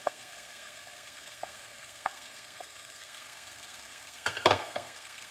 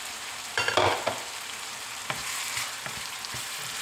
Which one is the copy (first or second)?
first